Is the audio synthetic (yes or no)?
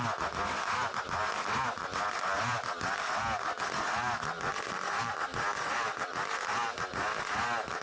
no